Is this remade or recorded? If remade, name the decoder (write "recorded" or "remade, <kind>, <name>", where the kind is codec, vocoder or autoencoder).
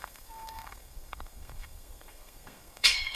remade, codec, SNAC